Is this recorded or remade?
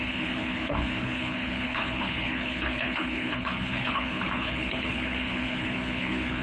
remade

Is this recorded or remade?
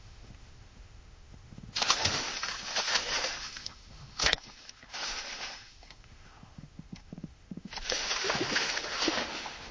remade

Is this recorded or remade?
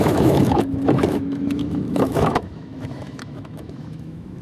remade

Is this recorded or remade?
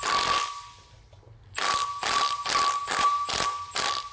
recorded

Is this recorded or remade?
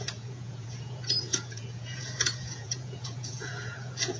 remade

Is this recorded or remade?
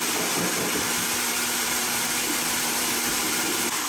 remade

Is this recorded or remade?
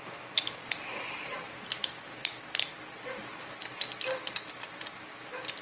recorded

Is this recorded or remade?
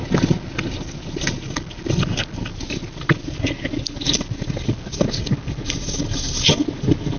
recorded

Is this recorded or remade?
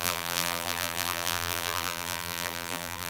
remade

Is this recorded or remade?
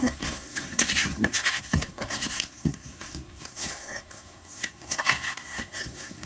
remade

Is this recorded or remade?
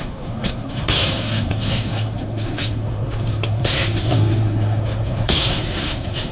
remade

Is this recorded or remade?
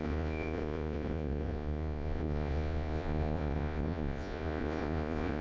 remade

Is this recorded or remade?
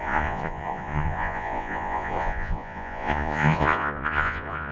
remade